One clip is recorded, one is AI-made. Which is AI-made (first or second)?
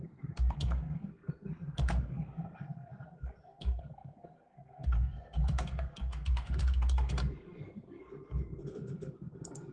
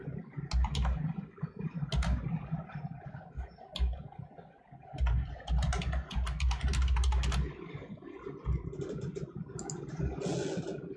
first